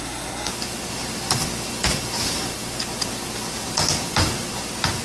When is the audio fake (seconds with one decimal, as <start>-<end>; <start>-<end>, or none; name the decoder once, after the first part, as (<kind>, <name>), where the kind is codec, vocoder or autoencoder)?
0.0-0.5 (codec, SNAC)

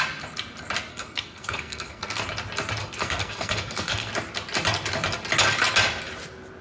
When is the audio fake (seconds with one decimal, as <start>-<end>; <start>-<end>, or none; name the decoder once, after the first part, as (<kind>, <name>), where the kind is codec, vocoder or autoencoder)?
0.9-2.2 (codec, SNAC); 2.8-4.1

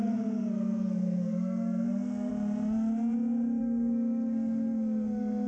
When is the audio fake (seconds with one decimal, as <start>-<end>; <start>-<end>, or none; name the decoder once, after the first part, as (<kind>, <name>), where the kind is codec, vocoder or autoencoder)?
0.0-2.3 (codec, SNAC); 3.6-5.5

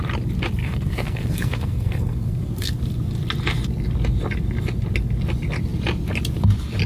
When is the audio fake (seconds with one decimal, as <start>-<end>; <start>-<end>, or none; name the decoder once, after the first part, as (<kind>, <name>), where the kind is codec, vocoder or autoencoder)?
0.6-2.8 (codec, SNAC)

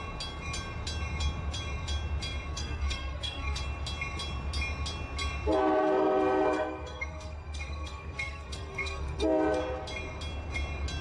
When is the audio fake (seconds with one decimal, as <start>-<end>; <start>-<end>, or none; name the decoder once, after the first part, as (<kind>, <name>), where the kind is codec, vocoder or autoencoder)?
2.5-3.6 (codec, SNAC); 5.8-9.6